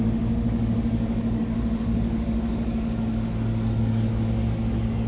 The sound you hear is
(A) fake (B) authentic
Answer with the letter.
A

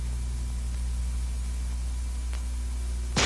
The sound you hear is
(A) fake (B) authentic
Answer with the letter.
B